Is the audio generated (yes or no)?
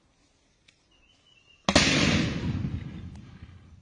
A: no